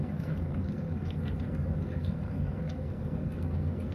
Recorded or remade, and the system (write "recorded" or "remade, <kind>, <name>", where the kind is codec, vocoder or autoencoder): remade, codec, SNAC